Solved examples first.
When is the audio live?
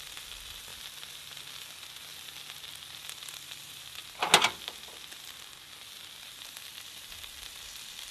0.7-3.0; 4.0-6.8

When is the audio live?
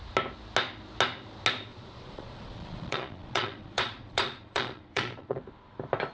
0.0-1.7; 5.4-6.1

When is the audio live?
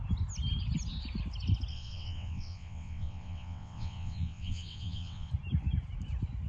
0.0-1.7; 5.3-6.5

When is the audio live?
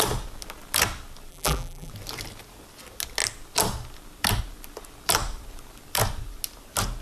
0.0-1.3; 1.9-7.0